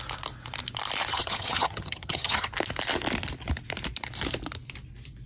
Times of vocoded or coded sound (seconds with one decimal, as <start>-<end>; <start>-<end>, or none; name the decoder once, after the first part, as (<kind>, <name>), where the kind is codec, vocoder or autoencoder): 1.1-2.5 (vocoder, HiFi-GAN)